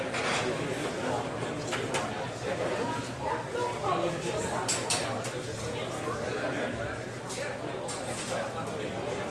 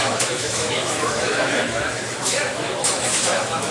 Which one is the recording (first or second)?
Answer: first